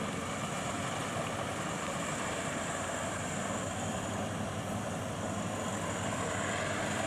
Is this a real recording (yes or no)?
no